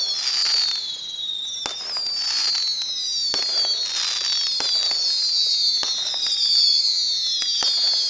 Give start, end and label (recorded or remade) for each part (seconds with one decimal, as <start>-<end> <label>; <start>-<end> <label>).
0.0-8.1 recorded